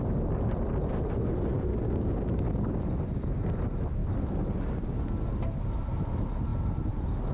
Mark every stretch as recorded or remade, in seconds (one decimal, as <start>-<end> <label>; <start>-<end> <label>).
0.0-1.7 recorded; 1.7-2.8 remade; 2.8-7.3 recorded